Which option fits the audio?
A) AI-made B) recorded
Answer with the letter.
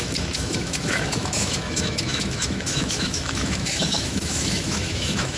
A